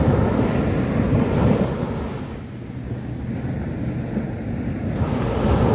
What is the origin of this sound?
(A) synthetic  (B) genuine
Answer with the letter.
B